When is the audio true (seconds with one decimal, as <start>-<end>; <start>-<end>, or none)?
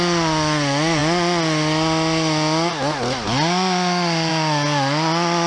0.0-5.5